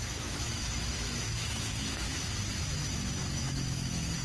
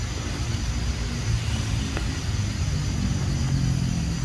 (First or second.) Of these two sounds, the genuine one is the second